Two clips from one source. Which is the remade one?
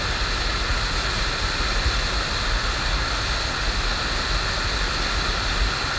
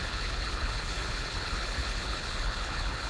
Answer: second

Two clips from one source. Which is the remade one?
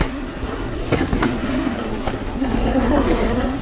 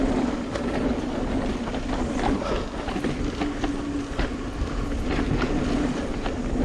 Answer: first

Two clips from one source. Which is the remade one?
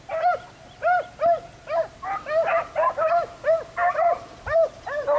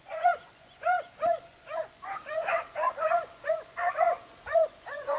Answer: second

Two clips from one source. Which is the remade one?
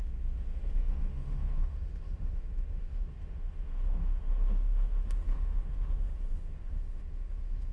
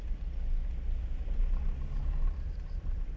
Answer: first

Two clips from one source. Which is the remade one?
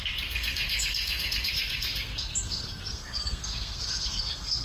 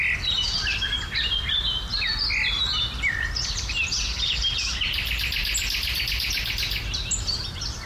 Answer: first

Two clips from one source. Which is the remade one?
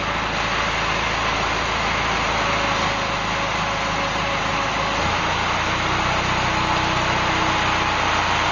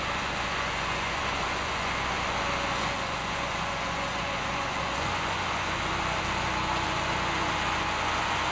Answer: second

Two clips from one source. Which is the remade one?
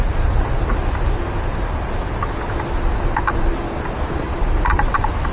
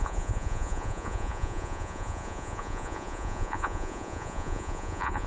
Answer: second